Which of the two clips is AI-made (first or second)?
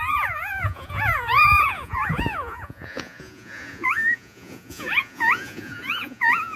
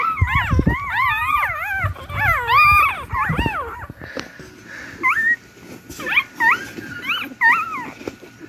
first